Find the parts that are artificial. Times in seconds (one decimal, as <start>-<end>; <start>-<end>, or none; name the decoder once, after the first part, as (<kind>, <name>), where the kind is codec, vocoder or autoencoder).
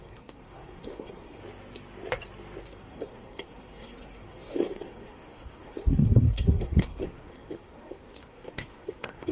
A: 0.0-1.4 (codec, SNAC); 2.6-9.3